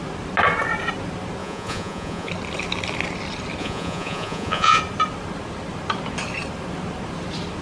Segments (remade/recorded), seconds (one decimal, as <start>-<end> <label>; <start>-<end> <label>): 0.0-1.4 recorded; 1.4-2.3 remade; 2.3-3.6 recorded; 3.6-4.8 remade; 4.8-7.6 recorded